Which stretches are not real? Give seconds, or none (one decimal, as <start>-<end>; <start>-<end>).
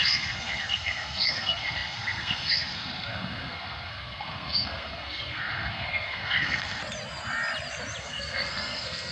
0.0-6.8; 8.0-9.1